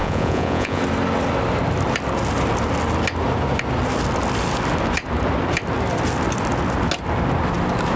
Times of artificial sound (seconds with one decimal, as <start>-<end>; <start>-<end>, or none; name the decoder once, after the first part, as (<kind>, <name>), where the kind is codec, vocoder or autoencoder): 0.0-0.8 (vocoder, Vocos)